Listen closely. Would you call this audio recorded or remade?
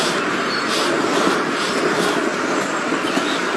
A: recorded